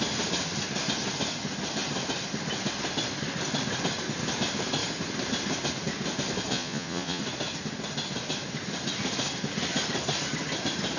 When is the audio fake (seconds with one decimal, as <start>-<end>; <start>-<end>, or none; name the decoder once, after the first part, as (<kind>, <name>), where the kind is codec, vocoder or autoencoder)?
6.5-7.2 (vocoder, Vocos)

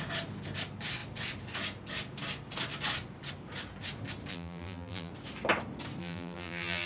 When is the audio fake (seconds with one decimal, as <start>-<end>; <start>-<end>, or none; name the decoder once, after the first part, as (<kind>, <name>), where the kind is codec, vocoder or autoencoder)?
4.3-5.1 (vocoder, BigVGAN v2); 6.0-6.9

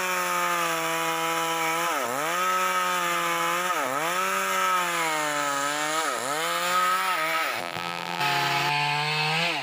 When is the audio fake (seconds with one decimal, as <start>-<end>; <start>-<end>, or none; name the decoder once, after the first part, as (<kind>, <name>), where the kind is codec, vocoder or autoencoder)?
7.6-8.2 (vocoder, BigVGAN v2)

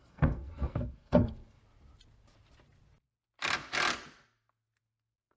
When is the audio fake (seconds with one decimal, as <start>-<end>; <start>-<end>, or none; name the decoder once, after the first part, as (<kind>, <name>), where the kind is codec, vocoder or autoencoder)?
0.0-1.6 (codec, SNAC); 4.8-5.4